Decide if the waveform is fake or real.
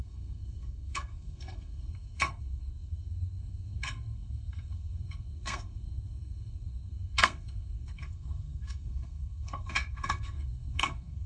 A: fake